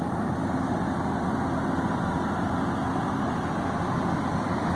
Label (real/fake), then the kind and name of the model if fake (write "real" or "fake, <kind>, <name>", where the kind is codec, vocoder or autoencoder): real